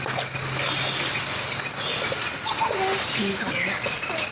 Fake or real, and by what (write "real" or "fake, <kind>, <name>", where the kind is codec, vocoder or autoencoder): real